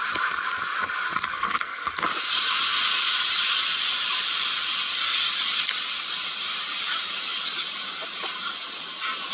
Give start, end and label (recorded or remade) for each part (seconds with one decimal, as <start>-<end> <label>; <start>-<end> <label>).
0.0-1.3 recorded; 1.3-1.9 remade; 1.9-9.3 recorded

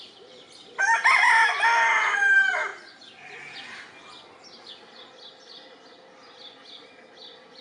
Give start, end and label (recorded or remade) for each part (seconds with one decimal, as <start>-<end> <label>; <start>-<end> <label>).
0.0-7.6 recorded

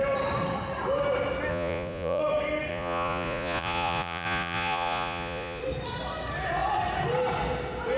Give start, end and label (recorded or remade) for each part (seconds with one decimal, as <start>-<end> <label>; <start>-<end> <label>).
0.0-1.5 recorded; 1.5-2.2 remade; 2.2-2.7 recorded; 2.7-5.6 remade; 5.6-8.0 recorded

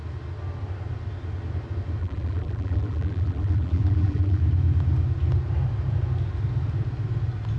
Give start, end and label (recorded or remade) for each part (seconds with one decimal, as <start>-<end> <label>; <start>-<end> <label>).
0.0-2.0 recorded; 2.0-4.4 remade; 4.4-7.6 recorded

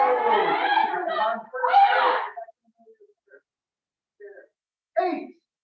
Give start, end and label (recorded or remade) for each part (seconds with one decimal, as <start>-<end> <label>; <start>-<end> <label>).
0.0-5.6 recorded

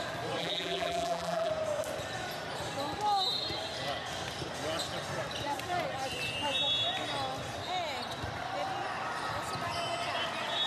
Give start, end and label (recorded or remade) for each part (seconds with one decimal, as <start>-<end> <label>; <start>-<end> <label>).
0.0-0.4 recorded; 0.4-1.5 remade; 1.5-10.7 recorded

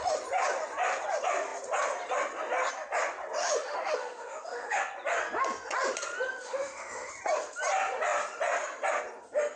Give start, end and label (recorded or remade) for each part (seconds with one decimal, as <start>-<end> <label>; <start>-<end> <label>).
0.0-3.4 recorded; 3.4-4.8 remade; 4.8-6.4 recorded; 6.4-7.1 remade; 7.1-9.6 recorded

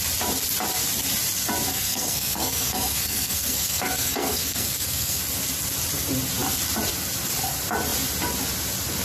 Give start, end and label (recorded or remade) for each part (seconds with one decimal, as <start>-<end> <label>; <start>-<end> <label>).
0.0-1.7 recorded; 1.7-5.2 remade; 5.2-9.0 recorded